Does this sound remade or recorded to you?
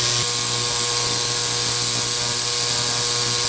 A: recorded